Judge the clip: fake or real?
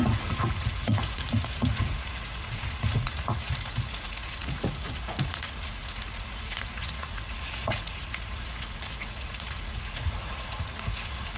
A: fake